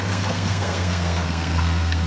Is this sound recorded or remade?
remade